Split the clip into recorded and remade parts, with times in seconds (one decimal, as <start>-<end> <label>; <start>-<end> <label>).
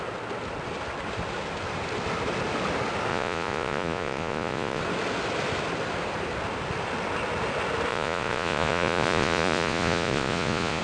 0.0-3.1 recorded; 3.1-4.8 remade; 4.8-7.9 recorded; 7.9-10.8 remade